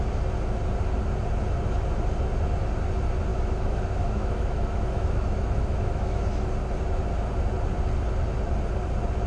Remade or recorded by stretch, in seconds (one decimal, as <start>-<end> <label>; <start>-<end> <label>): 0.0-3.3 recorded; 3.3-6.2 remade; 6.2-9.3 recorded